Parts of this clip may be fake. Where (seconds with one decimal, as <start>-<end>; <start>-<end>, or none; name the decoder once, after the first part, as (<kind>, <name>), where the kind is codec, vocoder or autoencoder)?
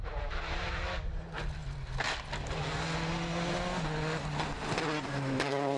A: none